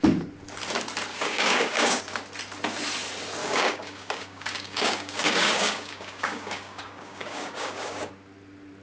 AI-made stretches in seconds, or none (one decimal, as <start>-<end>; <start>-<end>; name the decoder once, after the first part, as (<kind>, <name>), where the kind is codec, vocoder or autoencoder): 1.1-2.0 (codec, DAC); 3.4-8.1